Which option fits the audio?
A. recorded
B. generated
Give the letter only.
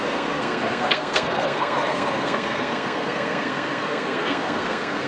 B